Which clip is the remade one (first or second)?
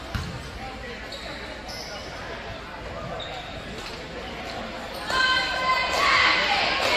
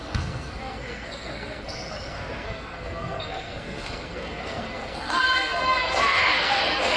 second